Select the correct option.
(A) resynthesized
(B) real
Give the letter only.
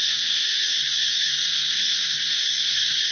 A